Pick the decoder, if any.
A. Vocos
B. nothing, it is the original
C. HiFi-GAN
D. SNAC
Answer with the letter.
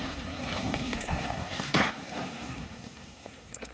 D